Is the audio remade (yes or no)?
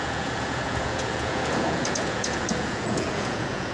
yes